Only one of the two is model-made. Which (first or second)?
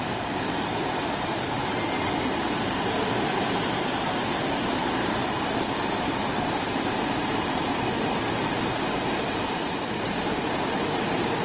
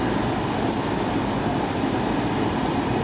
first